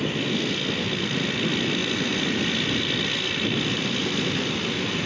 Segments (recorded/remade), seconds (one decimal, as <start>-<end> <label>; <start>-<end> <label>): 0.0-5.1 recorded